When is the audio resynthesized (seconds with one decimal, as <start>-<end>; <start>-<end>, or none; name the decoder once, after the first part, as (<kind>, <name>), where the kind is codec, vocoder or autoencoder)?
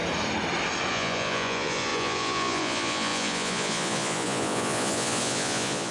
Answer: 0.9-5.9 (vocoder, Vocos)